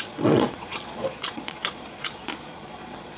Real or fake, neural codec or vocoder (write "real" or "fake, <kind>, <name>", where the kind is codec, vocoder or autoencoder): fake, vocoder, Vocos